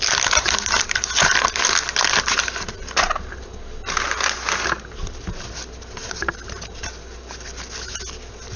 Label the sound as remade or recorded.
recorded